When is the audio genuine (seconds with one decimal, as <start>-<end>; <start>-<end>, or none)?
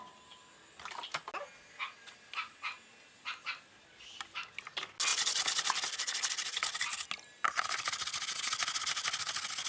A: 0.0-9.7